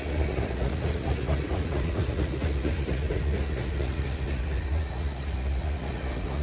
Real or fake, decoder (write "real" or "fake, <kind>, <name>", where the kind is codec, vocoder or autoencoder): fake, vocoder, Vocos